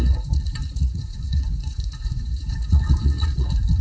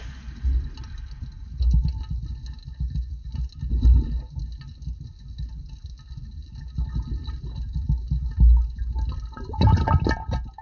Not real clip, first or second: first